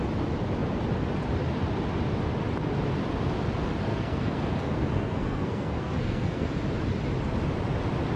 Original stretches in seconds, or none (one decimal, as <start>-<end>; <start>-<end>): 0.0-3.9; 6.5-8.2